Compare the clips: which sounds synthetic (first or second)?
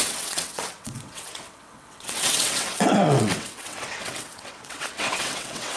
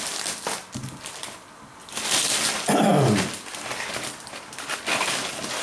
first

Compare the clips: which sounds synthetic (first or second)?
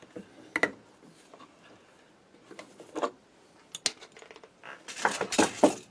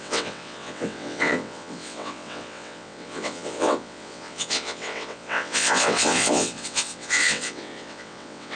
second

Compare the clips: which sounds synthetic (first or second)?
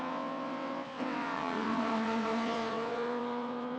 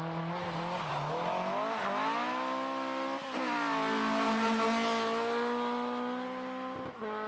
first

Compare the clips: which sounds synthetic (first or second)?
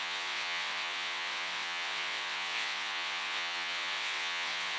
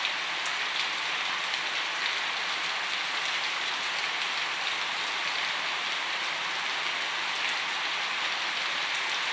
first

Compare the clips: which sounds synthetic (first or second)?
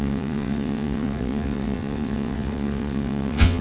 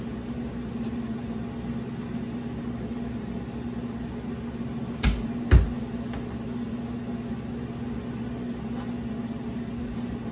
first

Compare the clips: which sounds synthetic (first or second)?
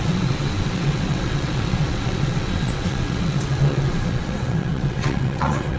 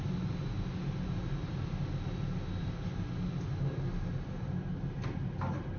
first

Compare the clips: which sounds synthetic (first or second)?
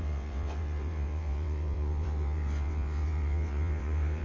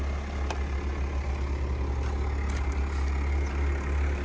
first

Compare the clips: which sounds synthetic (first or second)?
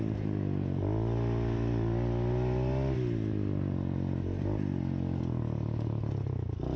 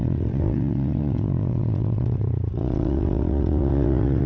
second